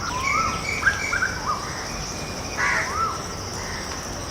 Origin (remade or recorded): recorded